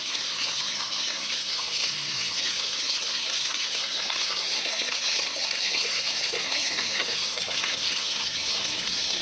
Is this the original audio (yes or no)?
no